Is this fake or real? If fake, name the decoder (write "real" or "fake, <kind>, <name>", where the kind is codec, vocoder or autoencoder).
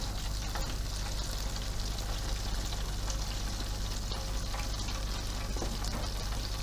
real